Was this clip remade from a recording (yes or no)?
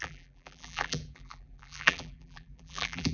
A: yes